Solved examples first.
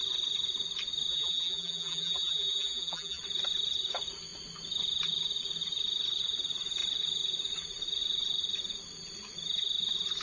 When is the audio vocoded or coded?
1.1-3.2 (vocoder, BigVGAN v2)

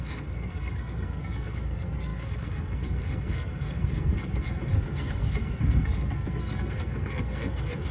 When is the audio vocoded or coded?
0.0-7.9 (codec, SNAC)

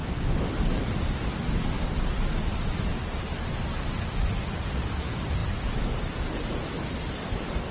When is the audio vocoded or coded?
none